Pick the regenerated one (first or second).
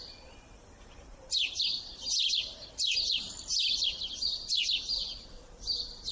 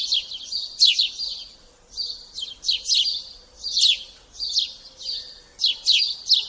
first